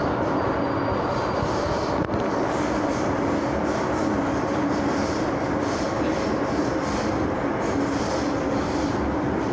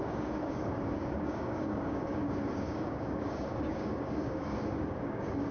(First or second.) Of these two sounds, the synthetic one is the second